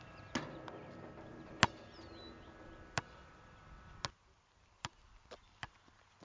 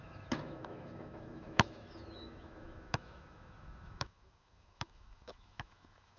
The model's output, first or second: second